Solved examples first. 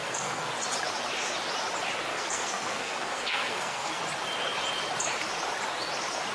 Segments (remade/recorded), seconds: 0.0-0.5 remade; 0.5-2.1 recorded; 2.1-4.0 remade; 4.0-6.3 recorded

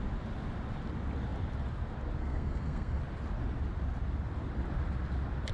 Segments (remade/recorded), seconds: 0.0-2.2 recorded; 2.2-3.0 remade; 3.0-5.5 recorded

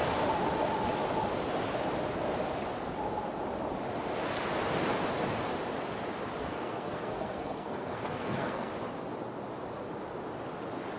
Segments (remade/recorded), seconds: 0.0-6.4 recorded; 6.4-8.7 remade; 8.7-11.0 recorded

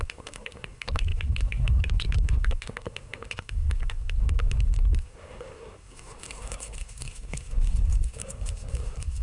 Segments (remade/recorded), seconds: 0.0-9.2 remade

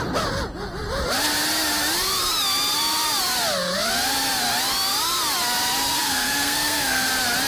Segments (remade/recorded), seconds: 0.0-6.0 recorded; 6.0-7.1 remade; 7.1-7.5 recorded

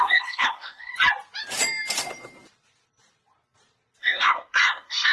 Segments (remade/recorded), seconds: 0.0-0.9 remade; 0.9-4.0 recorded; 4.0-5.1 remade

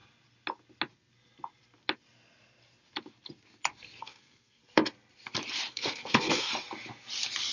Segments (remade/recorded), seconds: 0.0-4.0 recorded; 4.0-4.6 remade; 4.6-5.7 recorded; 5.7-6.5 remade; 6.5-7.5 recorded